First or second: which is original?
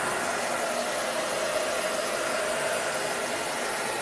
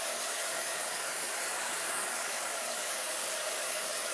first